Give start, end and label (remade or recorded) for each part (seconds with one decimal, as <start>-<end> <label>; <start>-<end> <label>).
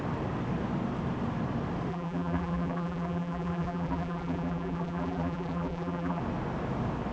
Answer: 0.0-1.9 recorded; 1.9-6.2 remade; 6.2-7.1 recorded